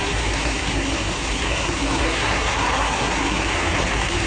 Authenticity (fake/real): fake